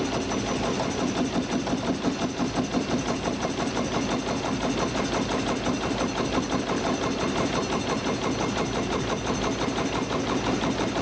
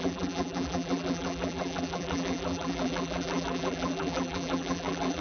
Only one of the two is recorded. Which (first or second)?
first